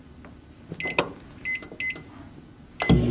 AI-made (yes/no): no